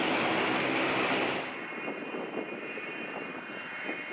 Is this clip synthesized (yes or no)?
no